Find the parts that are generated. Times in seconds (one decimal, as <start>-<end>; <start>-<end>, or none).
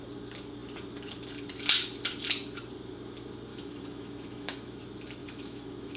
3.5-4.8; 5.2-6.0